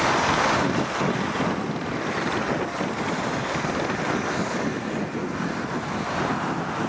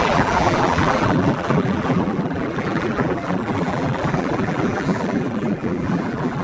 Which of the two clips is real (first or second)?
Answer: first